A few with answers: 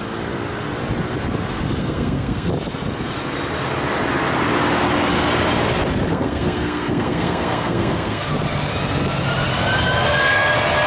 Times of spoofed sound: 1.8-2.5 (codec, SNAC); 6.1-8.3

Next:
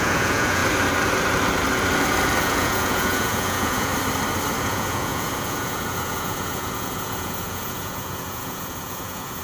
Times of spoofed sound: 0.0-0.6 (vocoder, Vocos); 2.4-3.9; 4.6-9.4

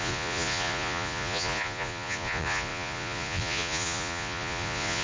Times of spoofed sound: 0.0-5.0 (vocoder, Vocos)

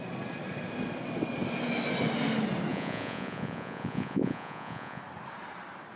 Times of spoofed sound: 2.7-5.0 (vocoder, Vocos)

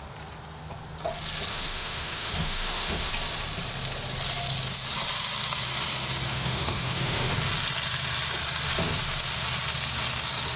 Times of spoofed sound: 1.5-3.1 (autoencoder, DAC-VAE); 6.3-7.3

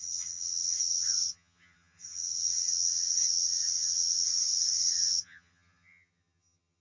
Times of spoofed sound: 0.0-6.8 (vocoder, HiFi-GAN)